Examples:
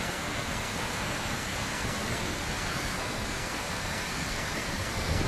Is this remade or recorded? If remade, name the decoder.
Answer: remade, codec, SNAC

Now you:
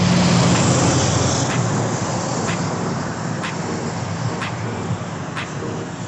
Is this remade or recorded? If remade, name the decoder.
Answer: recorded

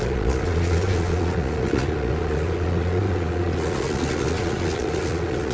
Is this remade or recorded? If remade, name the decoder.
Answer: remade, vocoder, Vocos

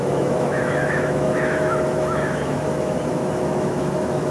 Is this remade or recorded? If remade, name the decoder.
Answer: remade, autoencoder, DAC-VAE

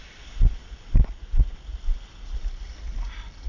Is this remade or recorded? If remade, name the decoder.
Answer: recorded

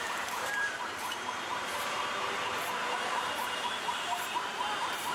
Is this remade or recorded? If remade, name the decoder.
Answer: remade, vocoder, BigVGAN v2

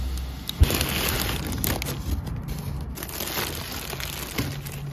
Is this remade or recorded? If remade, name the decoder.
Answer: recorded